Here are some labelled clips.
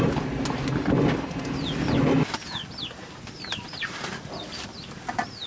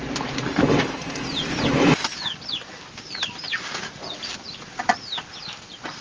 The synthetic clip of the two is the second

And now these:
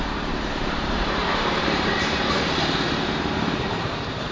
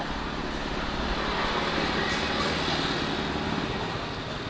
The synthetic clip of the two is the first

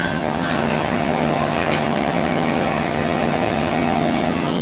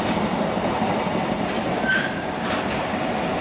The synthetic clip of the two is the first